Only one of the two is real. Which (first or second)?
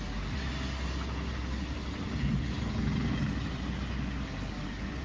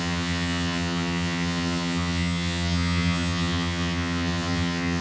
first